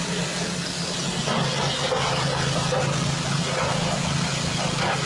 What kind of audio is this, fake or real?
real